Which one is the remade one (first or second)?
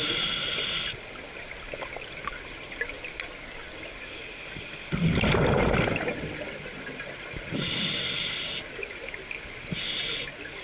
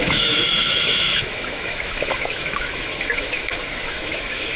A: second